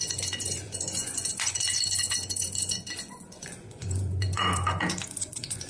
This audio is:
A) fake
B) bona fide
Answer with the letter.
A